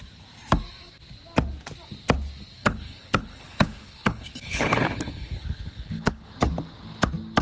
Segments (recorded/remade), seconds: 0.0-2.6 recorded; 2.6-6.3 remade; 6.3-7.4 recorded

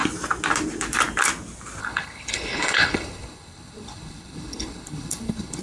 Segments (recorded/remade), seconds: 0.0-1.8 recorded; 1.8-5.6 remade

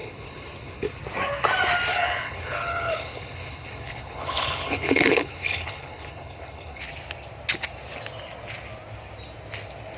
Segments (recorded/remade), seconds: 0.0-1.0 remade; 1.0-1.9 recorded; 1.9-6.8 remade; 6.8-10.0 recorded

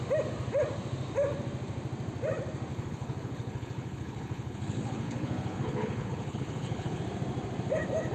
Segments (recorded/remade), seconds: 0.0-2.7 recorded; 2.7-7.0 remade; 7.0-8.1 recorded

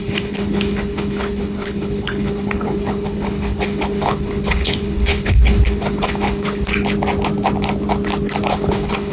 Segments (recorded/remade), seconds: 0.0-6.7 remade; 6.7-8.5 recorded; 8.5-9.1 remade

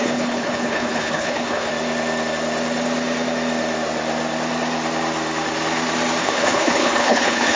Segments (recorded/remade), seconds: 0.0-1.7 remade; 1.7-6.2 recorded; 6.2-7.5 remade